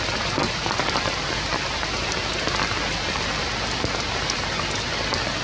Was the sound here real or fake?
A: real